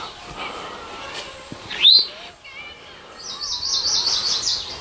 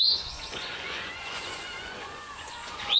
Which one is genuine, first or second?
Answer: first